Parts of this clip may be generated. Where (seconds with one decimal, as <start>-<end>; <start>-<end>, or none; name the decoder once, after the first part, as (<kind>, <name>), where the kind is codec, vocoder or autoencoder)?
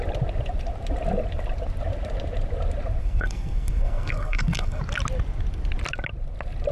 3.0-4.8 (codec, SNAC)